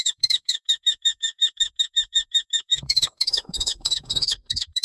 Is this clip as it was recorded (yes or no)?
no